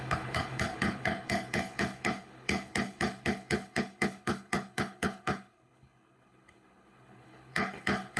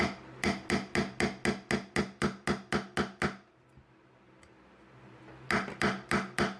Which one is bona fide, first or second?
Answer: second